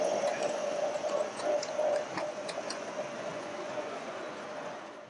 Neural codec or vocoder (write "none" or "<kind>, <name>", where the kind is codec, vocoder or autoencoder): vocoder, Vocos